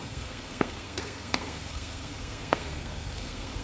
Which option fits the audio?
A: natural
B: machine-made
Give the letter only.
B